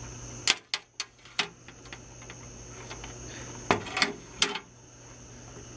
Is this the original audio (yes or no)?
yes